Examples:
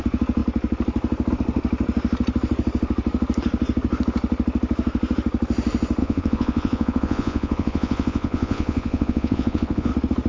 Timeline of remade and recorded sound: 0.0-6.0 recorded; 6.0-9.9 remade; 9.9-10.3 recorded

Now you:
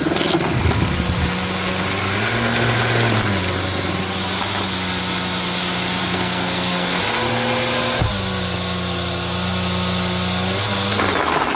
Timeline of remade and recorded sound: 0.0-6.0 recorded; 6.0-7.0 remade; 7.0-11.6 recorded

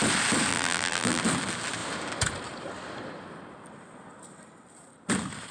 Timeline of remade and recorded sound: 0.0-0.5 recorded; 0.5-1.2 remade; 1.2-5.5 recorded

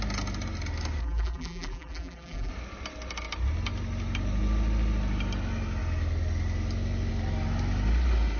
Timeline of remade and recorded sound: 0.0-1.0 recorded; 1.0-2.5 remade; 2.5-8.4 recorded